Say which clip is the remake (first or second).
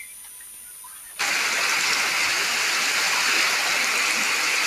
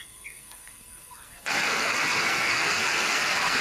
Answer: second